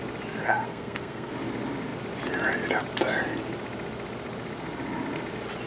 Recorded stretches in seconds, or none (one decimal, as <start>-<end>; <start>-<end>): 0.0-0.4; 1.3-5.7